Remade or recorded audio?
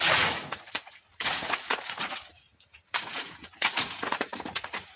remade